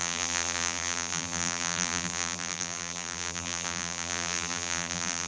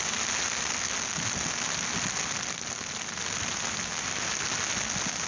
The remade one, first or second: first